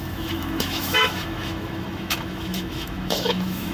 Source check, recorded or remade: remade